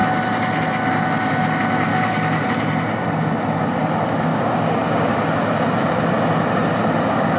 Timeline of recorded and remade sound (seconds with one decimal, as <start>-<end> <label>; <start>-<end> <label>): 0.0-1.9 recorded; 1.9-2.4 remade; 2.4-4.3 recorded; 4.3-5.3 remade; 5.3-7.4 recorded